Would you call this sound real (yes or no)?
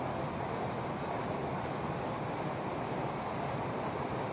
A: yes